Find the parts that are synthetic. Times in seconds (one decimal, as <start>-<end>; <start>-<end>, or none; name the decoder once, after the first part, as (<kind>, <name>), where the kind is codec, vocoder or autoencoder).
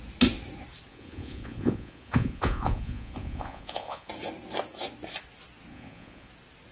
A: 0.9-4.1 (vocoder, Vocos); 5.7-6.3